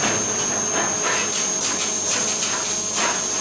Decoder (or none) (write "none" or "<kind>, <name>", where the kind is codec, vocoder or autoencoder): none